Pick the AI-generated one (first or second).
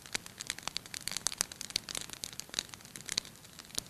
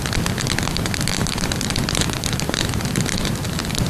second